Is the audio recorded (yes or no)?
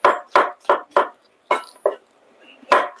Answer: yes